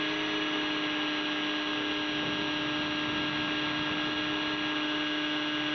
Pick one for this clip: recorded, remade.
recorded